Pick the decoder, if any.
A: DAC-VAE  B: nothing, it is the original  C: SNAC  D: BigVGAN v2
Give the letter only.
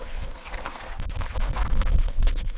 C